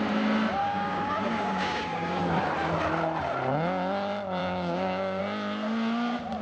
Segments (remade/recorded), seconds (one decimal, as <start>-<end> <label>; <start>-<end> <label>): 0.0-0.6 recorded; 0.6-2.2 remade; 2.2-4.4 recorded; 4.4-5.2 remade; 5.2-6.4 recorded